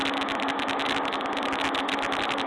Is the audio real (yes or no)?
yes